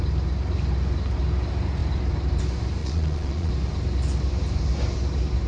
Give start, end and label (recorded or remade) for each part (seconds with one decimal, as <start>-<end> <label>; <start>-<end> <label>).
0.0-2.8 recorded; 2.8-3.5 remade; 3.5-5.5 recorded